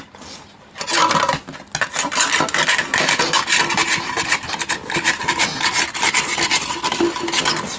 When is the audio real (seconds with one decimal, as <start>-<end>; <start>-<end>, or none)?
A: 0.0-7.8

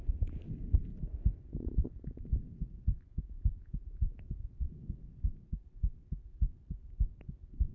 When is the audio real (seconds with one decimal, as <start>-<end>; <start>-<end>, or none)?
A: 0.0-3.1; 4.5-7.7